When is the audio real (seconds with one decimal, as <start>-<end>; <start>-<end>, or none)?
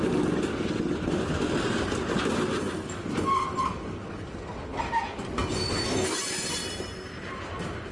0.0-7.9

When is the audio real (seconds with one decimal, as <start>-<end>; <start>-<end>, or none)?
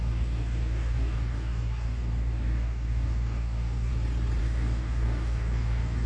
3.9-4.4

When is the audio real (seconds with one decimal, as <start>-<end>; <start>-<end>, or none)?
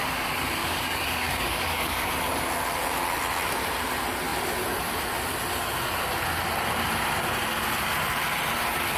0.0-0.6; 2.1-9.0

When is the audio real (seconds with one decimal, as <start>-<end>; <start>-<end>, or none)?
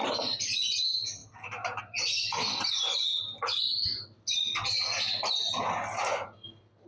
0.0-6.9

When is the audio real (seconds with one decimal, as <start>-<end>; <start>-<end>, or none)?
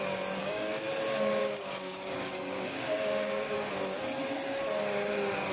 0.0-0.4; 0.9-1.4; 3.5-5.5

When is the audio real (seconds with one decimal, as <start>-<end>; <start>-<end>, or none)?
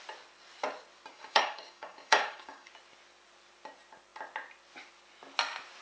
0.0-1.1; 2.7-5.8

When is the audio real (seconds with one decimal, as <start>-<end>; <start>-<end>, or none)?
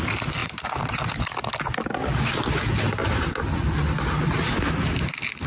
0.0-5.5